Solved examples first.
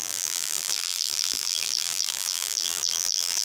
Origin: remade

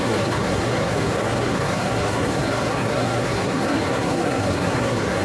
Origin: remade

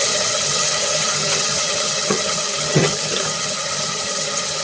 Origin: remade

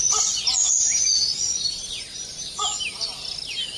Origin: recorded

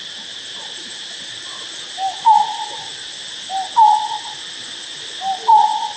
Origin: recorded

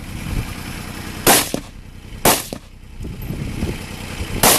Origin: recorded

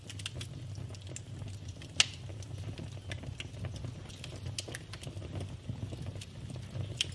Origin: recorded